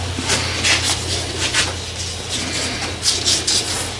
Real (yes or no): yes